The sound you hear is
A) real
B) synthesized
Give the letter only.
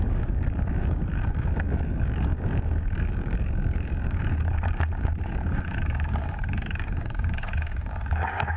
B